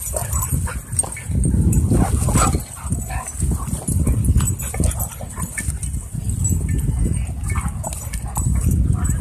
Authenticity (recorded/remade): recorded